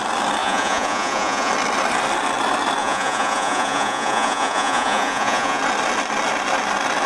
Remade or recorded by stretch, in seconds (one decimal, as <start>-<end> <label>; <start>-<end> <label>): 0.0-0.4 recorded; 0.4-1.5 remade; 1.5-2.8 recorded; 2.8-5.6 remade; 5.6-7.1 recorded

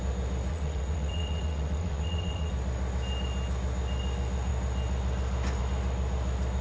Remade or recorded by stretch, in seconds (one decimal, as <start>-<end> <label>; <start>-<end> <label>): 0.0-0.5 recorded; 0.5-2.5 remade; 2.5-6.6 recorded

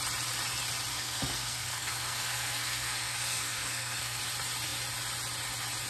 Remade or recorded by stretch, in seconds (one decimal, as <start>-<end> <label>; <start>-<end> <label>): 0.0-0.9 recorded; 0.9-4.2 remade; 4.2-5.9 recorded